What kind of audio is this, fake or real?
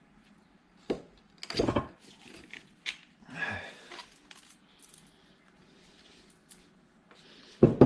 real